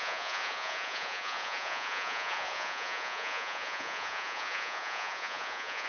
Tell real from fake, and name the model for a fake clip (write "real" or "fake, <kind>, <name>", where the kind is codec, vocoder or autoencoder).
fake, vocoder, Vocos